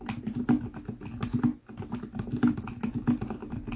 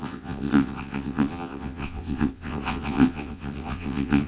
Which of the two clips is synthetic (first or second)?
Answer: second